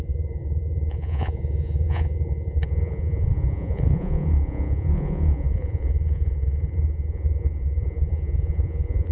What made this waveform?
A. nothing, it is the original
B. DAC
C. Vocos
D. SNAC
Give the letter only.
C